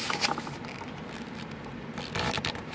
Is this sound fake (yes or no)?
no